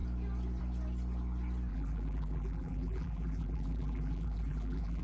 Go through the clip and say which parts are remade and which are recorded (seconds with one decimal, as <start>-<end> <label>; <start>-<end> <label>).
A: 0.0-1.7 recorded; 1.7-5.0 remade